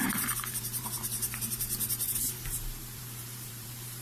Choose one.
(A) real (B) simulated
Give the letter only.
B